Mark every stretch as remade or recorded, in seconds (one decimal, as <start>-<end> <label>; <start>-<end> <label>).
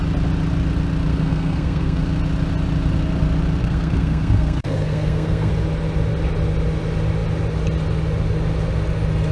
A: 0.0-1.1 recorded; 1.1-2.0 remade; 2.0-3.6 recorded; 3.6-5.5 remade; 5.5-9.3 recorded